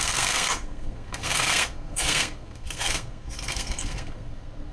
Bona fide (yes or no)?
no